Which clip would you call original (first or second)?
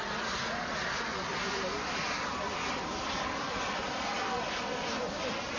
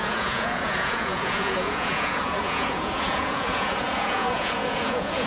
first